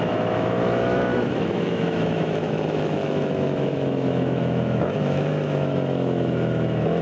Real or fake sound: fake